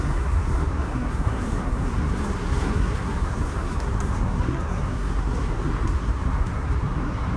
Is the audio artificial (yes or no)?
yes